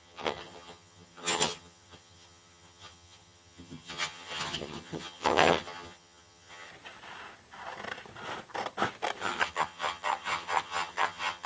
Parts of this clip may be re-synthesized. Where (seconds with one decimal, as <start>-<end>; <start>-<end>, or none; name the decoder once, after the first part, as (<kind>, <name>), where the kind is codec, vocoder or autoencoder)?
0.0-6.7 (vocoder, HiFi-GAN); 9.2-11.5